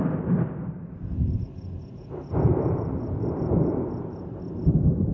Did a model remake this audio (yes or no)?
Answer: no